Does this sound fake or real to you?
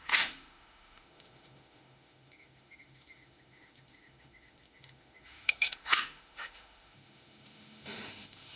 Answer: fake